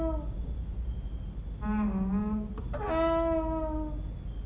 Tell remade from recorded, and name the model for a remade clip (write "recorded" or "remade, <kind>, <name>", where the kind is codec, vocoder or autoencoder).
recorded